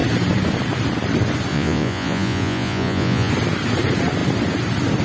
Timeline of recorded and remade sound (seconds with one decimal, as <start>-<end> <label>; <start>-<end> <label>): 0.0-1.5 recorded; 1.5-3.3 remade; 3.3-5.0 recorded